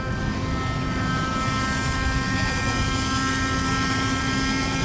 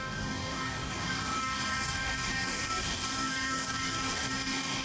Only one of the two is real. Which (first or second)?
first